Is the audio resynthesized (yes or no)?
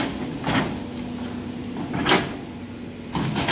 no